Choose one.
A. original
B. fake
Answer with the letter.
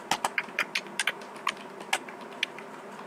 A